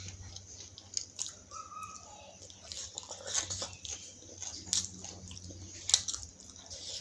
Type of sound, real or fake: real